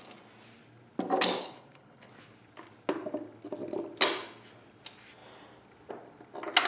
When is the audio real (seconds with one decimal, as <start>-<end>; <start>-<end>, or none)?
0.0-1.4; 2.1-6.7

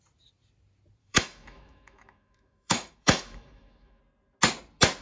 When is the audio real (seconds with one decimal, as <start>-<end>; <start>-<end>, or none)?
0.0-1.0; 4.0-5.0

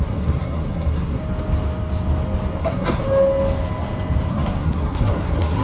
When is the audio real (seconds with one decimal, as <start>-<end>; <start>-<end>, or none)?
1.2-2.6; 3.0-4.3

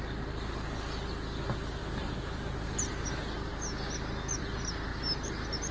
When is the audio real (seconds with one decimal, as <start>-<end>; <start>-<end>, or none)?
0.0-1.8; 2.9-4.9

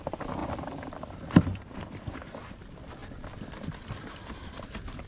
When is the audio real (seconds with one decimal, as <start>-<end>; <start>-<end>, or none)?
none